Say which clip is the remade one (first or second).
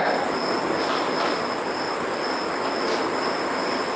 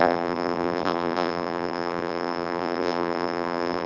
second